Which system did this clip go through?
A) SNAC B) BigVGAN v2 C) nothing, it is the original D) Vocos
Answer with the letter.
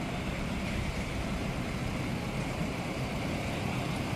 B